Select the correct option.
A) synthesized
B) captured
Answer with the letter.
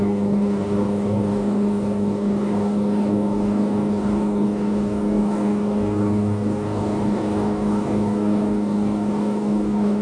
A